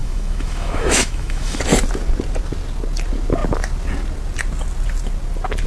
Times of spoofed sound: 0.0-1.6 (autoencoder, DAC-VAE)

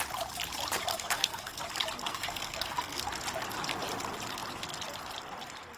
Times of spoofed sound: 0.9-1.6 (codec, SNAC); 2.0-3.0

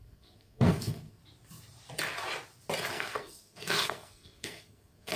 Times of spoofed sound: 0.0-1.2 (codec, SNAC); 2.9-5.2

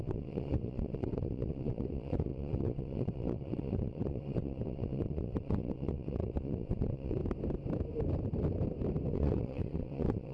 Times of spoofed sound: 0.0-7.2 (vocoder, WaveNeXt); 9.1-10.3